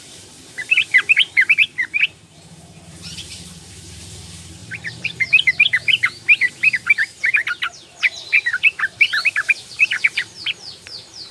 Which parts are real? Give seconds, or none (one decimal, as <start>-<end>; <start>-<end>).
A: 7.4-7.9